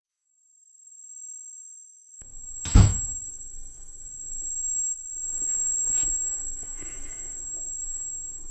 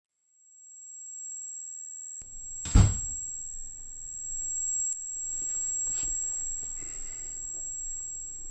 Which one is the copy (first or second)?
first